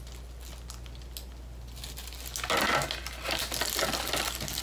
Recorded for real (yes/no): yes